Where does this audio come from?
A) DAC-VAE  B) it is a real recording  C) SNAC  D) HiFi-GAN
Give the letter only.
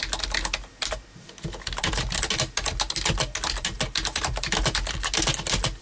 B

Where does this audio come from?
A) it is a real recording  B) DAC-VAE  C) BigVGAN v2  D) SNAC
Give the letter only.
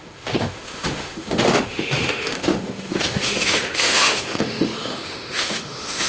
B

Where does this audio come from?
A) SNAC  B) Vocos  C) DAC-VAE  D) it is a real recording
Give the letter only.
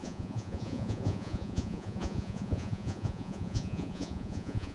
B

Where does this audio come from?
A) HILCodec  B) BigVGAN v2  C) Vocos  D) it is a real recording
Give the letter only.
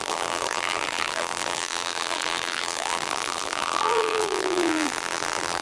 B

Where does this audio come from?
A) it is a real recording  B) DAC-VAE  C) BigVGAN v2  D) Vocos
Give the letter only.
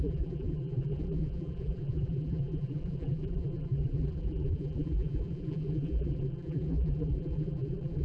C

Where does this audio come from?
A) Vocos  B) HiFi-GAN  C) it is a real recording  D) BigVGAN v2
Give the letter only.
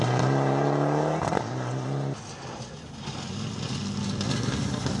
C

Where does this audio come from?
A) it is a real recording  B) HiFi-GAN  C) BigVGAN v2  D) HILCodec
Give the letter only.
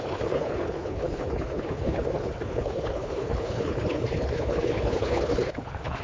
D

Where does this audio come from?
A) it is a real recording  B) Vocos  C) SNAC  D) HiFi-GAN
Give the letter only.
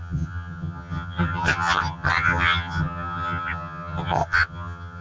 D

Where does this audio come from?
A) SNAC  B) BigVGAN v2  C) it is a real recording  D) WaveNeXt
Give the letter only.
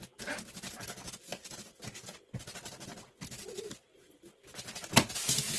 C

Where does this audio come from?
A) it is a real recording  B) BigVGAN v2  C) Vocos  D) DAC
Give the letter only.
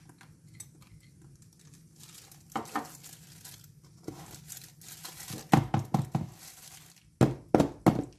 A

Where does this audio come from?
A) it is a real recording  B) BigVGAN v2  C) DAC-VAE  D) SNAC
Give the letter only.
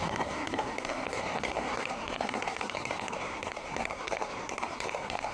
D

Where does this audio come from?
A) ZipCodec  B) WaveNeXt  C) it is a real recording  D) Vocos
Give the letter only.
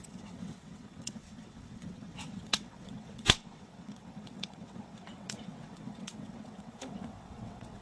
B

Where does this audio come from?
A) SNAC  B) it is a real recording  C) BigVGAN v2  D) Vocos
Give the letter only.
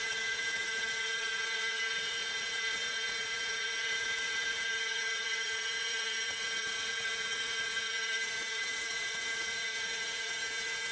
D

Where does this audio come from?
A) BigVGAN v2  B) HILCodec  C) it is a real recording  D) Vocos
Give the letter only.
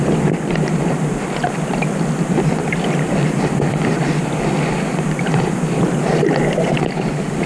A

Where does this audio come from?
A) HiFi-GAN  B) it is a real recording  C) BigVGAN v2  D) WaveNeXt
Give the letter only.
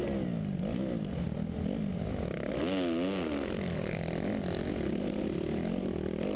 B